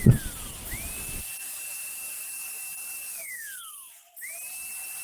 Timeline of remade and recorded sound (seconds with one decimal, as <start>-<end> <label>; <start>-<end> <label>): 0.0-1.4 recorded; 1.4-2.6 remade; 2.6-3.0 recorded; 3.0-3.9 remade; 3.9-5.0 recorded

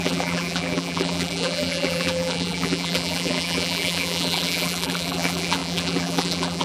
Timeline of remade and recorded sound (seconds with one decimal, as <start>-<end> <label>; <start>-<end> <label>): 0.0-6.6 remade

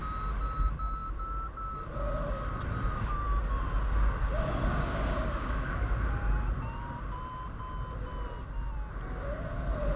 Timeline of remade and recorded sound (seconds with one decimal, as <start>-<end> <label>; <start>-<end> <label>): 0.0-4.7 recorded; 4.7-5.7 remade; 5.7-10.0 recorded

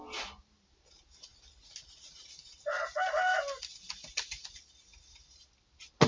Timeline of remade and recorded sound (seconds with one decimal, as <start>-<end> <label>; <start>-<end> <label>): 0.0-6.1 recorded

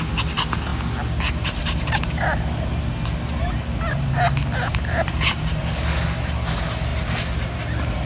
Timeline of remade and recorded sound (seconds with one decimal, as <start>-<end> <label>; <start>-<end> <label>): 0.0-4.7 recorded; 4.7-5.6 remade; 5.6-8.1 recorded

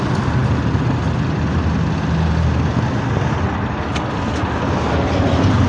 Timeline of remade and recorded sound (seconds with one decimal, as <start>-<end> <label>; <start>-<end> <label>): 0.0-5.7 recorded

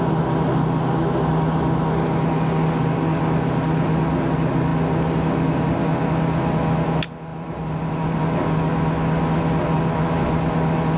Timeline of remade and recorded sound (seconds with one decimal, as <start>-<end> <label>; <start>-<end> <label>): 0.0-7.3 recorded; 7.3-8.2 remade; 8.2-11.0 recorded

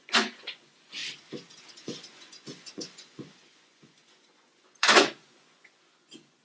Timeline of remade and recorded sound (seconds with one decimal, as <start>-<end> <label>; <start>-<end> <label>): 0.0-1.0 remade; 1.0-1.7 recorded; 1.7-6.4 remade